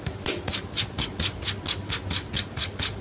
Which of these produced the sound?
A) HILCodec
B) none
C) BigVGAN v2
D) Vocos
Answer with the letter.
B